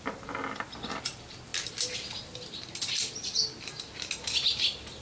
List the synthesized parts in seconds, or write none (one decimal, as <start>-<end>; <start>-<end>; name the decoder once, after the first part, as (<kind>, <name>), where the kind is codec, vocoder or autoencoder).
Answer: none